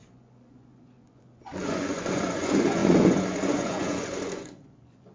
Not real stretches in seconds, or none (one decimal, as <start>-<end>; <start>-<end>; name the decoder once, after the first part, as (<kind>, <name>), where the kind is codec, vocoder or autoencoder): 0.0-5.1 (vocoder, Vocos)